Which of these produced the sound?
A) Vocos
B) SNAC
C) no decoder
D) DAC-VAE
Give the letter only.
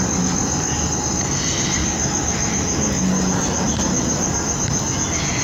C